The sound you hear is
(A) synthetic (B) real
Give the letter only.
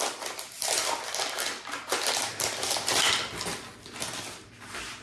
B